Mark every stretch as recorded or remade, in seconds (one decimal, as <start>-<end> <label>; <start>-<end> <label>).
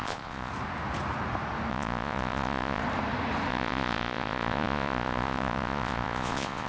0.0-0.5 remade; 0.5-1.7 recorded; 1.7-2.8 remade; 2.8-3.5 recorded; 3.5-6.7 remade